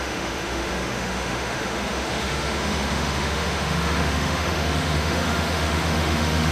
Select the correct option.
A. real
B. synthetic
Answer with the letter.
B